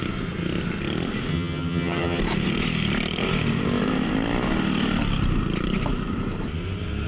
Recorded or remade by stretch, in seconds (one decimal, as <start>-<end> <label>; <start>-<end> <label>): 0.0-1.3 recorded; 1.3-2.2 remade; 2.2-7.1 recorded